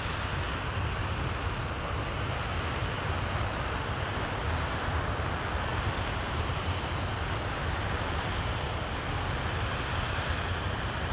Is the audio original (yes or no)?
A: yes